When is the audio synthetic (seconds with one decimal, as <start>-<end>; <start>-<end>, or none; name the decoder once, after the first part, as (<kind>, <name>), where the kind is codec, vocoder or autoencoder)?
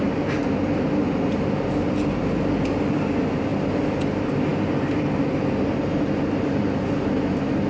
none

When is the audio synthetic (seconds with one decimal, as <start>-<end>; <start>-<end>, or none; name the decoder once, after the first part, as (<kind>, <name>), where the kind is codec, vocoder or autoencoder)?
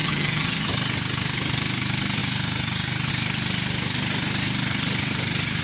0.0-0.7 (vocoder, HiFi-GAN)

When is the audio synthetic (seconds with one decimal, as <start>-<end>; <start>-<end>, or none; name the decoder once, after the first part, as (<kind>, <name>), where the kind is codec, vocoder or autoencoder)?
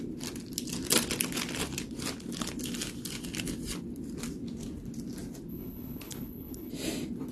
5.5-6.7 (codec, HILCodec)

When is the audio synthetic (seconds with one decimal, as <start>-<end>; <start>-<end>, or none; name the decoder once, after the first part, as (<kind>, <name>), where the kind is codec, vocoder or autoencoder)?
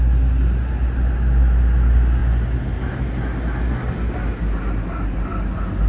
none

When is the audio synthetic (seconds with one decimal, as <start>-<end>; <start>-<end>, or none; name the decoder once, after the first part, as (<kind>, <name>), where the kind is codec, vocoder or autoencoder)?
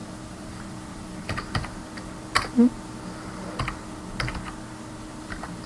0.0-1.8 (vocoder, BigVGAN v2); 5.2-5.7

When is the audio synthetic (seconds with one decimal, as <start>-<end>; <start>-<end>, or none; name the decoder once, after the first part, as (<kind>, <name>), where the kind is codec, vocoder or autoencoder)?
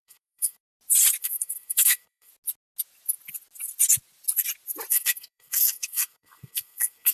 0.0-0.6 (codec, SNAC); 1.2-2.3; 4.9-7.1